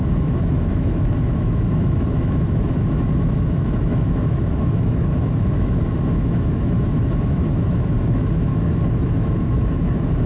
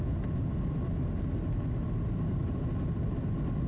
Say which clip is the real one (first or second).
second